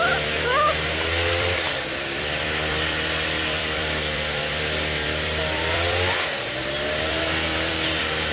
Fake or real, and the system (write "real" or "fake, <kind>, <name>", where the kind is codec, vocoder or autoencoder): fake, vocoder, BigVGAN v2